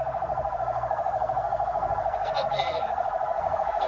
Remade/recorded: remade